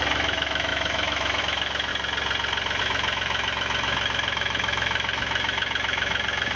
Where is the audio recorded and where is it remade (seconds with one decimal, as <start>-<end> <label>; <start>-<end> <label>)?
0.0-1.9 remade; 1.9-2.8 recorded; 2.8-6.6 remade

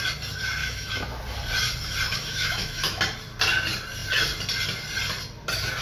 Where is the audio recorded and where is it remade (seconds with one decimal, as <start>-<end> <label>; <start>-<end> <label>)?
0.0-0.6 recorded; 0.6-1.2 remade; 1.2-2.1 recorded; 2.1-3.0 remade; 3.0-5.8 recorded